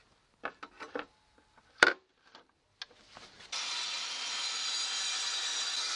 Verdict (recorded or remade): recorded